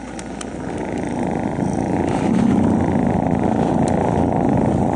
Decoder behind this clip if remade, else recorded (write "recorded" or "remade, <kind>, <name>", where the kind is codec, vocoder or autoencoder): recorded